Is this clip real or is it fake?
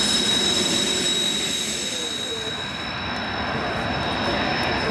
real